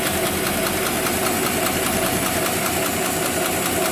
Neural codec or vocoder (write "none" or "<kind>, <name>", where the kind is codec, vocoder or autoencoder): none